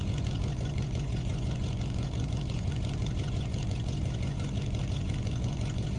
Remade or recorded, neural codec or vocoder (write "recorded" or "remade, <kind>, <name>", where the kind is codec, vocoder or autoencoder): remade, vocoder, Vocos